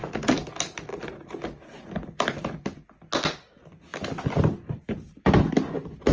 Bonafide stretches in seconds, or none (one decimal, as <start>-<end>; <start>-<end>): 0.5-3.9; 5.2-6.1